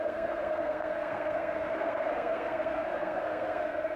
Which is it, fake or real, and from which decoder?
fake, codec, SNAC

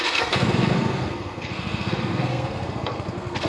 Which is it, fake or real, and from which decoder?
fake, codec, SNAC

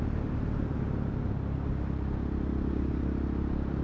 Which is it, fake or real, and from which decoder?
real